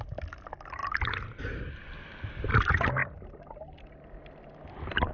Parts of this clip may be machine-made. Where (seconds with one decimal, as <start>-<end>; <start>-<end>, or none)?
0.0-3.0